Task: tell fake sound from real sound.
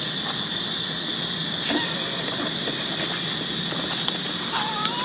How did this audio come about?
real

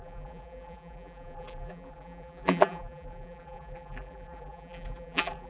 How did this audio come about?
fake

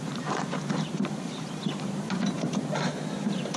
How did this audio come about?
fake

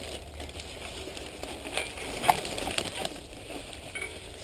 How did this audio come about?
real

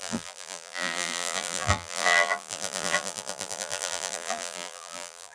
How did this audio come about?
fake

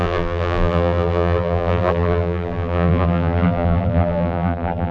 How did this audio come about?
fake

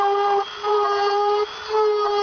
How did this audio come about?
real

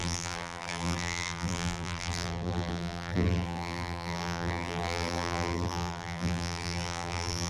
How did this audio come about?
fake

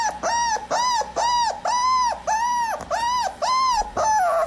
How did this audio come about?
real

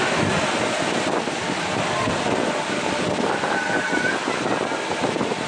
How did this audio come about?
real